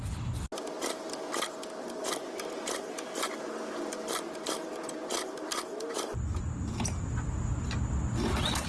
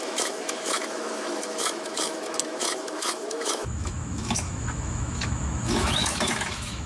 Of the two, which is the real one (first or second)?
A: first